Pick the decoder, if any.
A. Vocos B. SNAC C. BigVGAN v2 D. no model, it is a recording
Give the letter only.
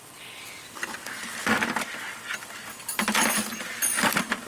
D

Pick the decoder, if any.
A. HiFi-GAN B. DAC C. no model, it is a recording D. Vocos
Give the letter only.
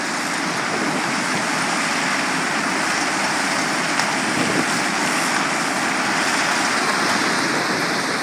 C